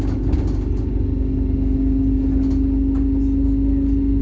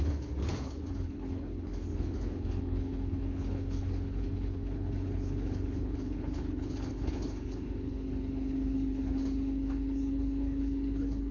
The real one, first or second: first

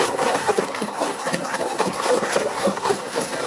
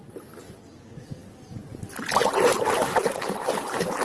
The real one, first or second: second